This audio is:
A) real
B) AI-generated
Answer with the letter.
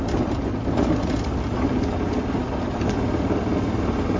A